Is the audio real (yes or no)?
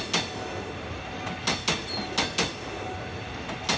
yes